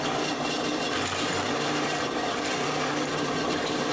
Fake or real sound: fake